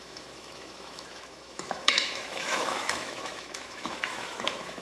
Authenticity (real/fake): fake